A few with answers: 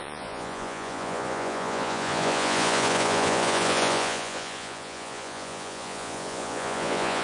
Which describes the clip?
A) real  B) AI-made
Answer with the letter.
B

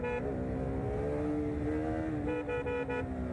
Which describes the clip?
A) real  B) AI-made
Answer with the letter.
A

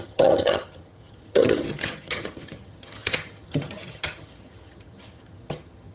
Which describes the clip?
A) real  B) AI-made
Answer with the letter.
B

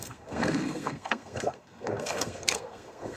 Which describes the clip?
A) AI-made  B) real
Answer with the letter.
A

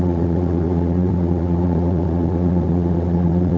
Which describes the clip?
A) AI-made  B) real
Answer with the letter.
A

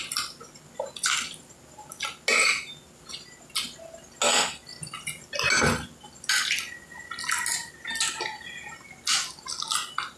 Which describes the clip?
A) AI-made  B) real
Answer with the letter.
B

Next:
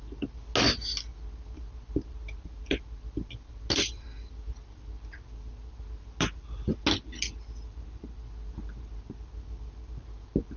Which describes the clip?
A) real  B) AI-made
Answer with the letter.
A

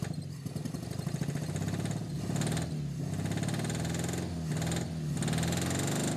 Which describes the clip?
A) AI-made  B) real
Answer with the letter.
B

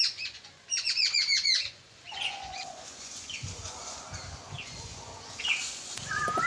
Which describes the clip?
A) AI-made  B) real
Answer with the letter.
A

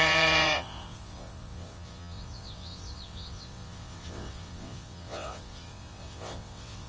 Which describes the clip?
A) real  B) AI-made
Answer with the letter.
B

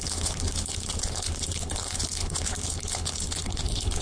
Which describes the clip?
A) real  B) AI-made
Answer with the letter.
B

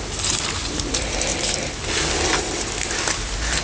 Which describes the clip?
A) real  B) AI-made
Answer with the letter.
A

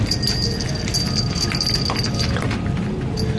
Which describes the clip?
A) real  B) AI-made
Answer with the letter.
A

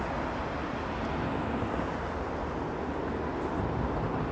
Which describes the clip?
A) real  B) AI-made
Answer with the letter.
A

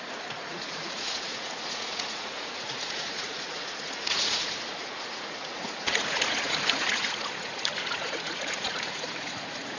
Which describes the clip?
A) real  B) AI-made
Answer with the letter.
B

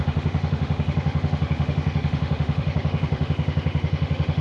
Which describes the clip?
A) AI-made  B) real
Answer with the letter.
A